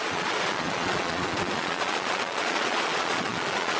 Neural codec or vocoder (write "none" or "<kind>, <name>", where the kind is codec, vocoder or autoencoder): vocoder, Vocos